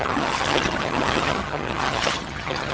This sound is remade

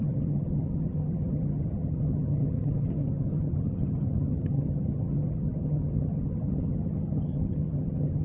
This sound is remade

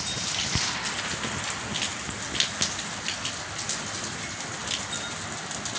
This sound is recorded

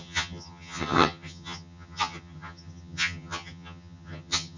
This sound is remade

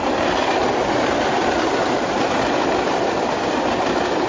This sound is recorded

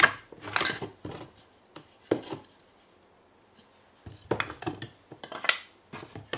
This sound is recorded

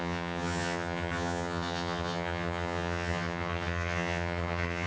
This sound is remade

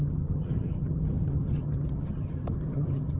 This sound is remade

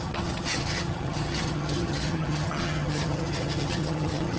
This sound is remade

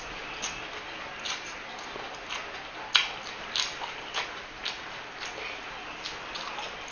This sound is recorded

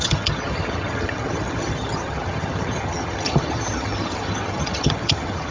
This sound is remade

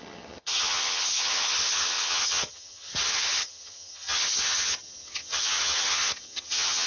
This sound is remade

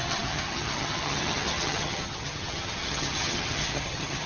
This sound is remade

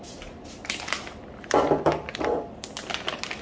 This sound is recorded